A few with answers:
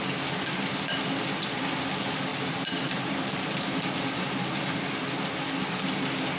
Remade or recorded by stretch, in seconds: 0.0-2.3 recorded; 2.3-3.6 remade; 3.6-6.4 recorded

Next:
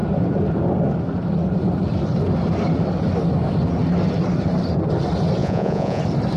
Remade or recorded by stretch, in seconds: 0.0-5.4 recorded; 5.4-6.0 remade; 6.0-6.4 recorded

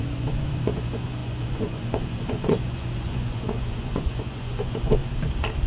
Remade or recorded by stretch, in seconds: 0.0-5.0 remade; 5.0-5.7 recorded

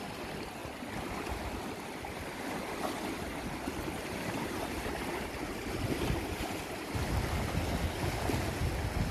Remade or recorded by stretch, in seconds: 0.0-9.1 recorded